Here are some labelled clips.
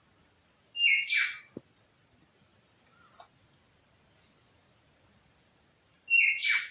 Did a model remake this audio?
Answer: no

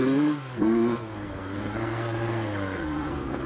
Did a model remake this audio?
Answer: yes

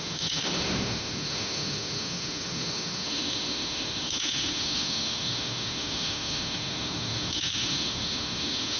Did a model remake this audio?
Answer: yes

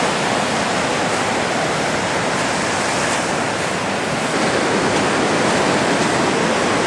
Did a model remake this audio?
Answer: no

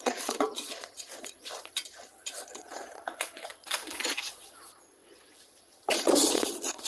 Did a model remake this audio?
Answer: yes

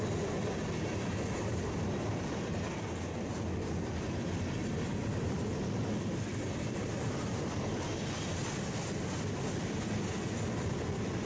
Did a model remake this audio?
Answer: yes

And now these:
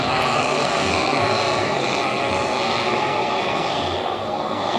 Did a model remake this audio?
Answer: yes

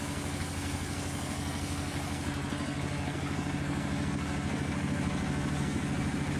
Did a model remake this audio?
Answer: yes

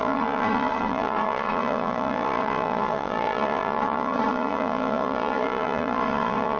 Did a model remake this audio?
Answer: yes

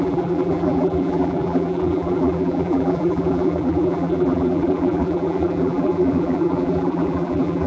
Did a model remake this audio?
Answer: yes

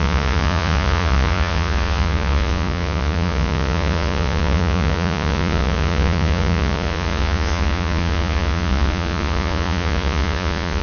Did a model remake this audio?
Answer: yes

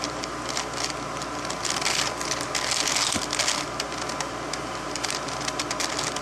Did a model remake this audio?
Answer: no